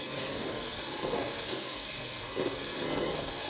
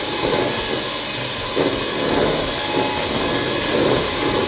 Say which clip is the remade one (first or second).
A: first